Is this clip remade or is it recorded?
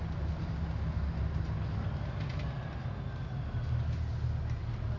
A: recorded